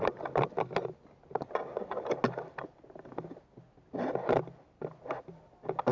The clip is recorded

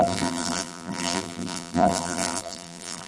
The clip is remade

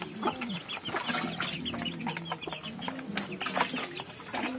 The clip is recorded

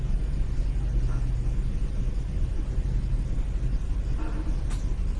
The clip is recorded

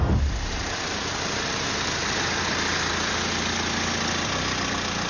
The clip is recorded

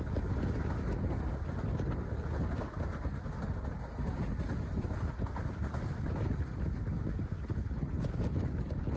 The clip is recorded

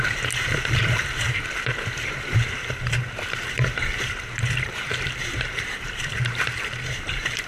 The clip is remade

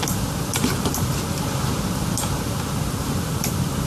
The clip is remade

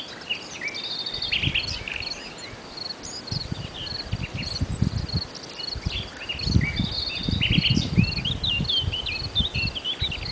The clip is recorded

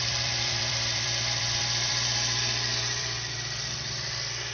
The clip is remade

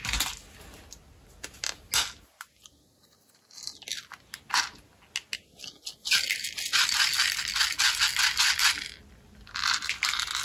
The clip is recorded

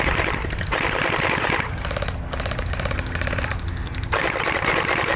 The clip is recorded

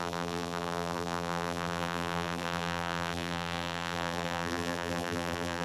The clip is remade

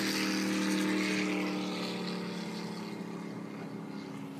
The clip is recorded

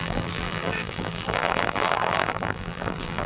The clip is remade